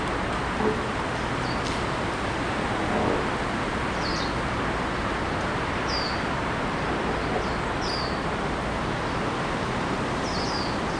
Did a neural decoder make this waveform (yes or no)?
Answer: no